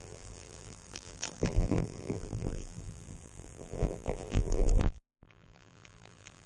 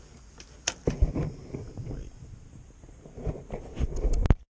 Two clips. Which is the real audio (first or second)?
second